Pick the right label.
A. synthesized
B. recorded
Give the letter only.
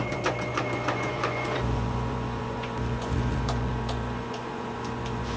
A